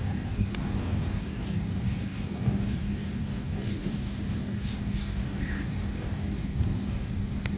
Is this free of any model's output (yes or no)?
no